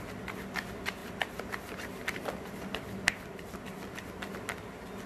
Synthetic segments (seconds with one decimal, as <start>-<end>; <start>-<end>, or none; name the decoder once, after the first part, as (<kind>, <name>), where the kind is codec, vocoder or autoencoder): 1.0-4.1 (vocoder, BigVGAN v2)